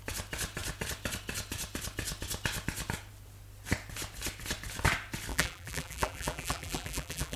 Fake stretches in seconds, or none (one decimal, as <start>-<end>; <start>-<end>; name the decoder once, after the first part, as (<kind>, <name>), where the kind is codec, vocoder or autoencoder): 5.3-7.4 (vocoder, BigVGAN v2)